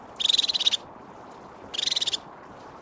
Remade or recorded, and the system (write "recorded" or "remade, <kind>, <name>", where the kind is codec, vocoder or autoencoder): recorded